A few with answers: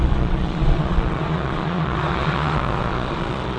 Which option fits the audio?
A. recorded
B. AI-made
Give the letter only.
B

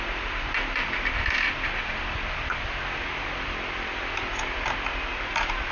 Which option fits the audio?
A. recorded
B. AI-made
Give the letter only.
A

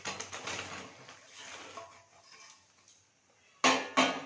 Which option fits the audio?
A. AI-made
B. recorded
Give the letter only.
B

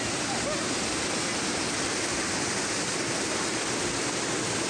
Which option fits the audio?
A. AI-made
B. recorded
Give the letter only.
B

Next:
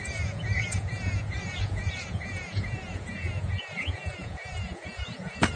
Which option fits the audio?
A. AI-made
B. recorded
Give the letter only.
A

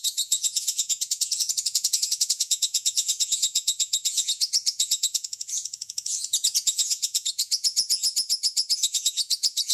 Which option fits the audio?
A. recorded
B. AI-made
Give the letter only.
B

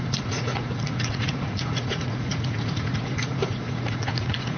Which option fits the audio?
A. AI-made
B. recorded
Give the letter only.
A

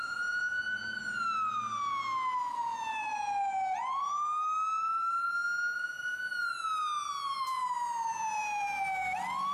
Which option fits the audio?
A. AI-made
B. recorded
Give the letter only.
B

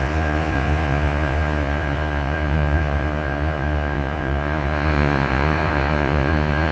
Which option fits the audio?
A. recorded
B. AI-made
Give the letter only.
B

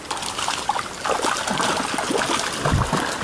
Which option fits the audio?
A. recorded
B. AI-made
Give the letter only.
A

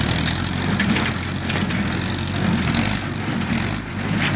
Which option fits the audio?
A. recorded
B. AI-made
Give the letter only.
A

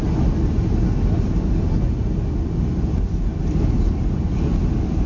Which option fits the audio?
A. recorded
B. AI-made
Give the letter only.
A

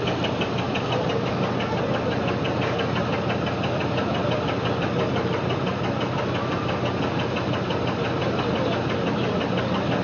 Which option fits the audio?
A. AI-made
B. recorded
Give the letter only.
B